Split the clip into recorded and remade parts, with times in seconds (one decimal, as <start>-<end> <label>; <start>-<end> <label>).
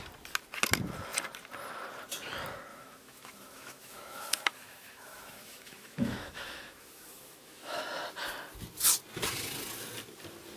0.0-2.7 recorded; 2.7-7.8 remade; 7.8-10.6 recorded